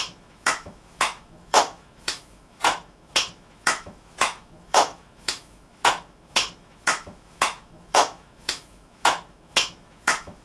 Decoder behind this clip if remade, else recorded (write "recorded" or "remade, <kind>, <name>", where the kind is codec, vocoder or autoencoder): remade, autoencoder, DAC-VAE